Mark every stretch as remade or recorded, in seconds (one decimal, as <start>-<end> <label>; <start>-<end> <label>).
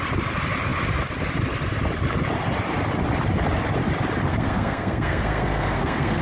0.0-4.3 recorded; 4.3-6.2 remade